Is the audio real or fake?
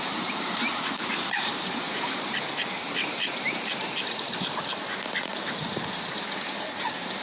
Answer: fake